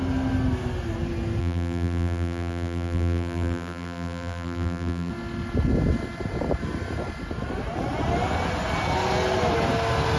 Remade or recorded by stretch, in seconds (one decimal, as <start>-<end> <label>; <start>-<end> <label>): 0.0-1.4 recorded; 1.4-5.1 remade; 5.1-10.2 recorded